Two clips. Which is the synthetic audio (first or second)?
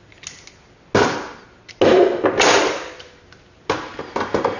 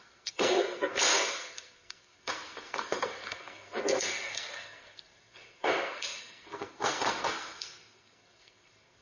second